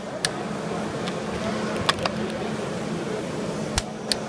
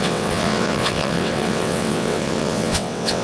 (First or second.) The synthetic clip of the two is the second